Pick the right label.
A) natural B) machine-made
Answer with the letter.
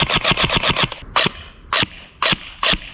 A